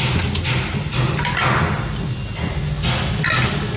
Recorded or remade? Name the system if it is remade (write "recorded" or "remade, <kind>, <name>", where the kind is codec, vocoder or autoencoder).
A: recorded